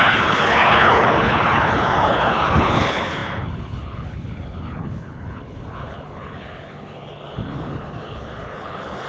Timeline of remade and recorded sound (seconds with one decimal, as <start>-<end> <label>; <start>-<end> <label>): 0.0-9.1 remade